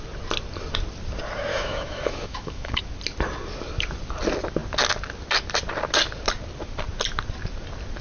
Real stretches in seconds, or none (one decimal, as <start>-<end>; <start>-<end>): 0.0-1.5; 2.8-8.0